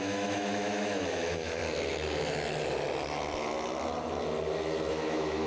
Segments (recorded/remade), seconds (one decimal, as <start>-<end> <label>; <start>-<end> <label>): 0.0-1.6 remade; 1.6-4.9 recorded; 4.9-5.5 remade